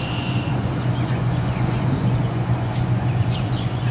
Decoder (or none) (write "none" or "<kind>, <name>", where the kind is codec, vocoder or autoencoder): vocoder, Vocos